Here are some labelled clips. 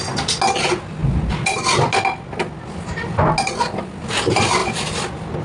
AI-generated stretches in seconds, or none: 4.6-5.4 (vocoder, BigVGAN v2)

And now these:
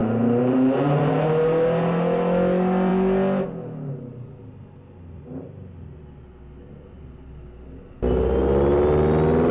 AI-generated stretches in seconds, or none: 0.0-1.1 (vocoder, BigVGAN v2)

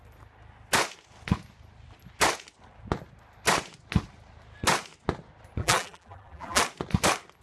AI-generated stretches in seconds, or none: 5.6-6.6 (vocoder, BigVGAN v2)

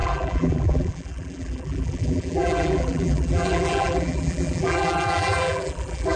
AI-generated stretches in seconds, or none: 0.0-6.2 (vocoder, BigVGAN v2)

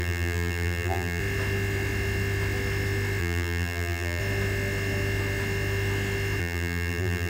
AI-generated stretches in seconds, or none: 0.0-1.2 (vocoder, BigVGAN v2); 3.2-4.2; 6.4-7.3

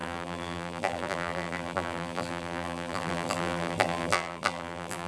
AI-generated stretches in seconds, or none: 0.0-5.1 (vocoder, BigVGAN v2)

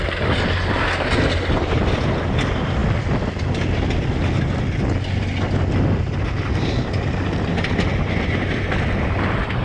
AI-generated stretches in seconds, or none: none

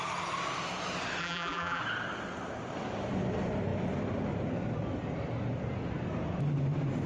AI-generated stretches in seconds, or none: 1.2-1.8 (vocoder, BigVGAN v2)